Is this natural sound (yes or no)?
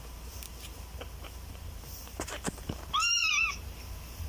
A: no